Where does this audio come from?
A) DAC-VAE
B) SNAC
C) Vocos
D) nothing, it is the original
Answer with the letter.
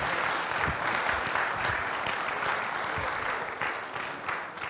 D